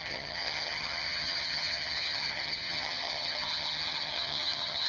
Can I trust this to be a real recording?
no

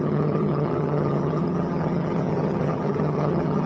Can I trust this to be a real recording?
no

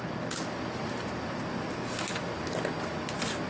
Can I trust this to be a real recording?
yes